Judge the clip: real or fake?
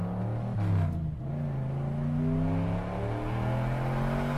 real